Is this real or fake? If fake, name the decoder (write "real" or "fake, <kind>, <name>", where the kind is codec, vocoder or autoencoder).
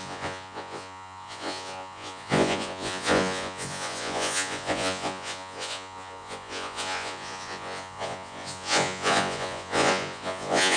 fake, vocoder, Vocos